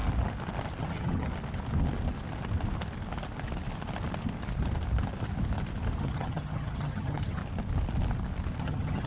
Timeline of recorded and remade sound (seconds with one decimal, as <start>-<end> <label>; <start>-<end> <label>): 0.0-0.8 recorded; 0.8-1.3 remade; 1.3-6.0 recorded; 6.0-7.4 remade; 7.4-8.6 recorded; 8.6-9.1 remade